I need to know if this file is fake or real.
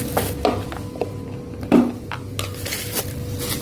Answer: real